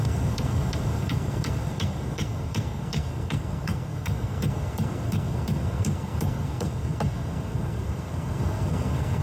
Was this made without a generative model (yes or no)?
no